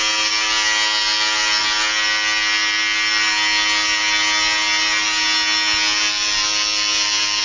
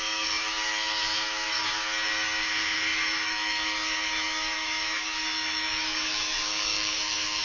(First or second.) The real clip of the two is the first